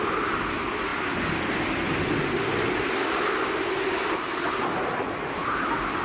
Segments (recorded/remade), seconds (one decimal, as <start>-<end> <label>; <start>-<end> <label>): 0.0-6.0 recorded

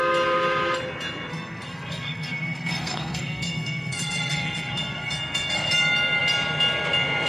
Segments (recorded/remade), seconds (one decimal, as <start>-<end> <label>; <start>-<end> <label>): 0.0-1.3 recorded; 1.3-5.7 remade; 5.7-7.3 recorded

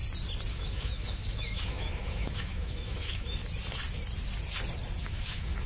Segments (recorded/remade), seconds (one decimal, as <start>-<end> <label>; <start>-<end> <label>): 0.0-0.5 recorded; 0.5-3.4 remade; 3.4-5.0 recorded; 5.0-5.7 remade

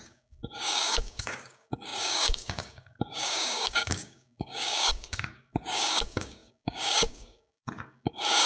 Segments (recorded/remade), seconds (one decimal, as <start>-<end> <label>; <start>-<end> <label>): 0.0-8.5 remade

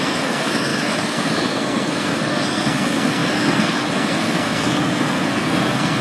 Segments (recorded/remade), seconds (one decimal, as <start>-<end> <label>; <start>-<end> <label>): 0.0-6.0 remade